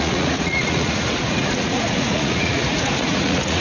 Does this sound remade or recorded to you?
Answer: remade